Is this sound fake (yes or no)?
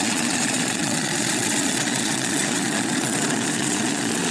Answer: yes